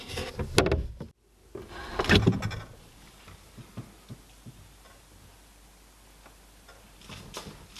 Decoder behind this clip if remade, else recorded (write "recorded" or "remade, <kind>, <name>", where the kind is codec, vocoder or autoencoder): recorded